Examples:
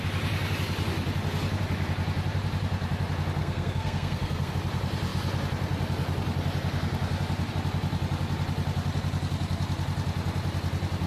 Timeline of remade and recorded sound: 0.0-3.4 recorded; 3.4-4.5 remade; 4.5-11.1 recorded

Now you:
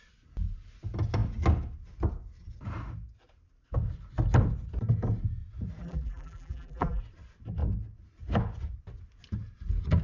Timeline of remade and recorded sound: 0.0-5.8 recorded; 5.8-7.0 remade; 7.0-10.0 recorded

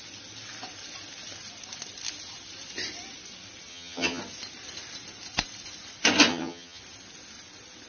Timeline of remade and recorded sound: 0.0-3.7 recorded; 3.7-4.2 remade; 4.2-6.3 recorded; 6.3-6.8 remade; 6.8-7.9 recorded

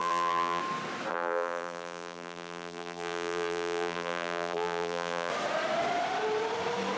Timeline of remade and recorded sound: 0.0-0.6 remade; 0.6-1.1 recorded; 1.1-5.3 remade; 5.3-7.0 recorded

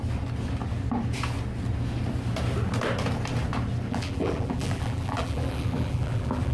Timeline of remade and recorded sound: 0.0-3.9 recorded; 3.9-6.5 remade

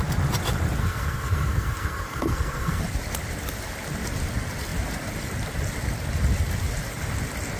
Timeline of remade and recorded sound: 0.0-0.8 recorded; 0.8-2.8 remade; 2.8-7.6 recorded

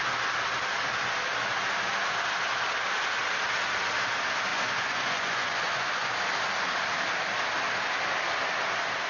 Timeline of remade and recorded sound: 0.0-4.5 recorded; 4.5-6.1 remade; 6.1-9.1 recorded